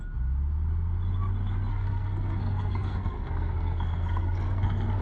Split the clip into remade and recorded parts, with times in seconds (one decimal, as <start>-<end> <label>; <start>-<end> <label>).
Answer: 0.0-1.7 recorded; 1.7-5.0 remade